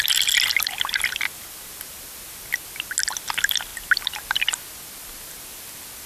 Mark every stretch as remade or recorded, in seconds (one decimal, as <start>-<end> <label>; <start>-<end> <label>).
0.0-6.1 recorded